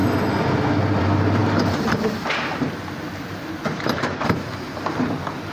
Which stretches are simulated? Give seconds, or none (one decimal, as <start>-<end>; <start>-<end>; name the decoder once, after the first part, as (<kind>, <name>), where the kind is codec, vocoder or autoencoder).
1.0-5.5 (vocoder, BigVGAN v2)